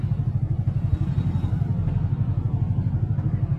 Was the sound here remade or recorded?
recorded